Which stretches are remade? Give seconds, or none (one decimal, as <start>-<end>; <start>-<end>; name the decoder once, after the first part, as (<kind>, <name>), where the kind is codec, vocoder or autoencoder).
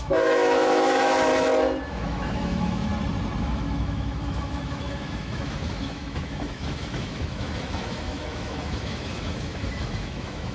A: 0.0-1.3 (autoencoder, DAC-VAE); 1.9-2.9; 3.4-10.5